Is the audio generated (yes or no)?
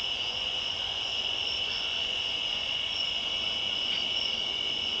yes